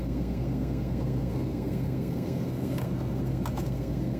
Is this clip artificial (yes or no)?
yes